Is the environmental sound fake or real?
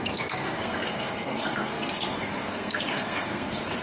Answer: fake